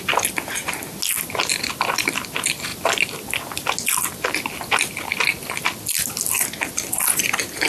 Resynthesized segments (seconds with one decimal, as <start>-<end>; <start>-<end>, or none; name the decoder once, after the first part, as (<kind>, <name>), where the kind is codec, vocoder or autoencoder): none